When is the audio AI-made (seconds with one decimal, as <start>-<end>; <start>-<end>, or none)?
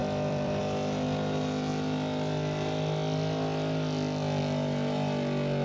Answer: 0.0-0.6